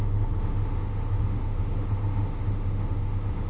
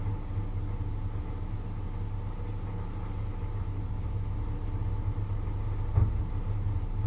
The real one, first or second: second